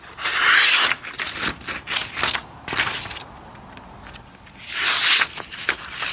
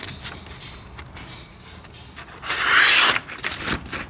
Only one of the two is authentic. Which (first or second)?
first